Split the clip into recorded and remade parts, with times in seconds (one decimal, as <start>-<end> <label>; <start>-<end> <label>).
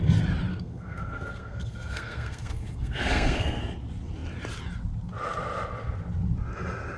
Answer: 0.0-0.5 recorded; 0.5-3.6 remade; 3.6-7.0 recorded